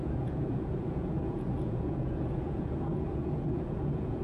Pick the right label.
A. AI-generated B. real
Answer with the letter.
A